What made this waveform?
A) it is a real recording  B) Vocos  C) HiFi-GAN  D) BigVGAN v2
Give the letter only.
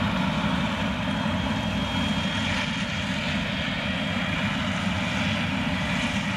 A